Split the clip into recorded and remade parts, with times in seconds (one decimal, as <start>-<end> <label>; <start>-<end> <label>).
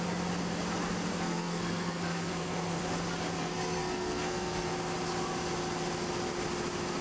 0.0-1.1 recorded; 1.1-2.8 remade; 2.8-3.4 recorded; 3.4-4.7 remade; 4.7-7.0 recorded